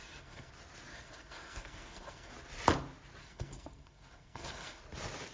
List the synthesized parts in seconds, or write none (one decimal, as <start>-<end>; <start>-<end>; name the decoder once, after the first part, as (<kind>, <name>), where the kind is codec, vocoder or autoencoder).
0.0-0.5 (codec, SNAC); 0.9-2.3; 3.2-4.8